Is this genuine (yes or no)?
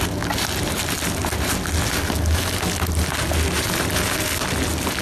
yes